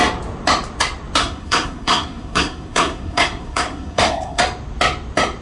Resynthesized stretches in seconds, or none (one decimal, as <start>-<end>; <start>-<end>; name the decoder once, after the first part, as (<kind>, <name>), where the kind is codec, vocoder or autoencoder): 1.2-4.4 (codec, SNAC)